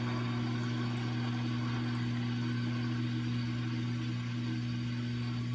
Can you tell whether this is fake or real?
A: real